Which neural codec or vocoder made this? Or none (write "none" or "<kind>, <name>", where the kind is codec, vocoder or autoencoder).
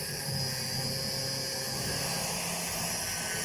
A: none